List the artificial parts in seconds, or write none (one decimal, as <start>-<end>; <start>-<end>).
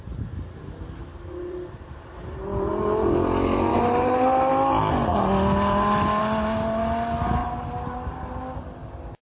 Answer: 1.0-2.7; 3.7-4.5; 7.4-8.4